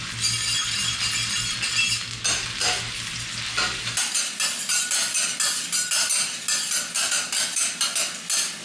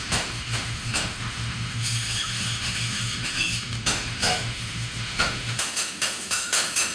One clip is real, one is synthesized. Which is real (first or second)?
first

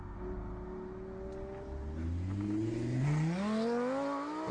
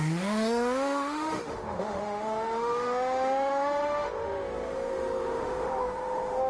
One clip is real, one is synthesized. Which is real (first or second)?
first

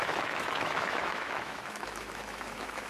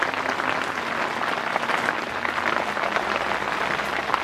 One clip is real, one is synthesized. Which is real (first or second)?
second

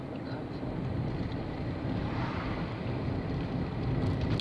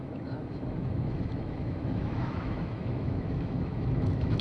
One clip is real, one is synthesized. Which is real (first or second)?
first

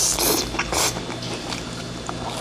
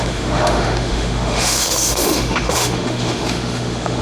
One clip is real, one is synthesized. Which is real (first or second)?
first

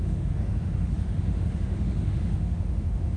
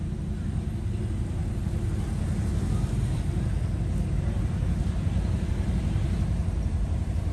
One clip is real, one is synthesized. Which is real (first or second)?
second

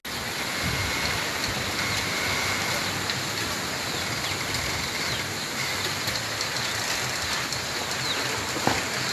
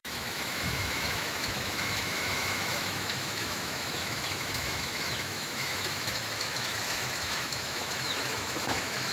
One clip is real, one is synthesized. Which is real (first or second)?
first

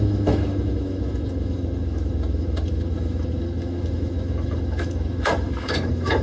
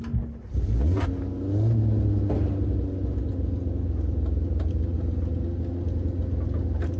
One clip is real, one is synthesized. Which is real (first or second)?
second